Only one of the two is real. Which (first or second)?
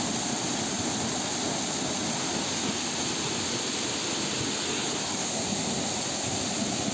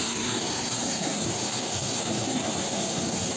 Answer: first